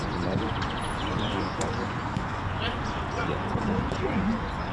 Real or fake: fake